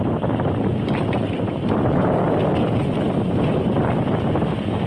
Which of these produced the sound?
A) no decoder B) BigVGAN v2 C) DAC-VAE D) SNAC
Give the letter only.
A